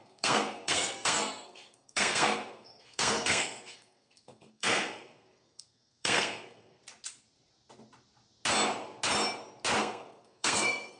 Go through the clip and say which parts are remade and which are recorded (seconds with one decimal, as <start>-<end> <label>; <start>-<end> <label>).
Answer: 0.0-6.8 remade; 6.8-9.8 recorded; 9.8-11.0 remade